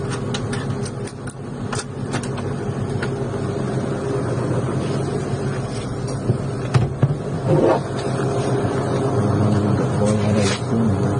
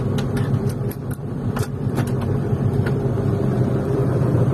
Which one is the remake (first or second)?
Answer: second